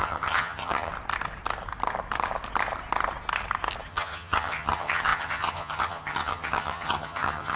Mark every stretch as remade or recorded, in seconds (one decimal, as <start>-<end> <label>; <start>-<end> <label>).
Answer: 0.0-0.9 remade; 0.9-3.9 recorded; 3.9-7.6 remade